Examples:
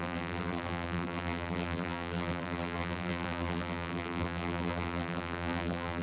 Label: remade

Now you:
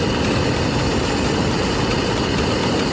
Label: recorded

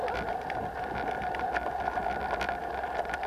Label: recorded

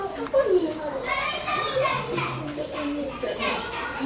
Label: remade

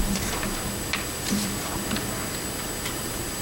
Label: remade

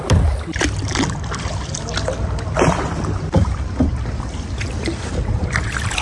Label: remade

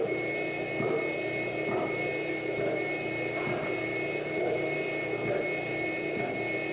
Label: recorded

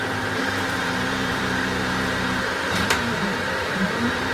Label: remade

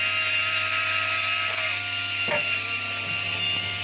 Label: recorded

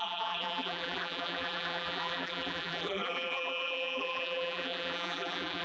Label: remade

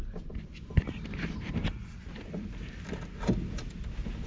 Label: recorded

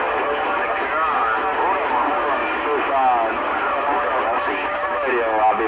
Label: recorded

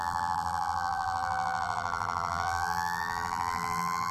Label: remade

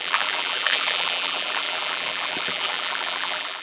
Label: remade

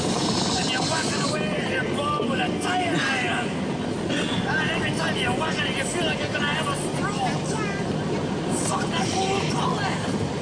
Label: recorded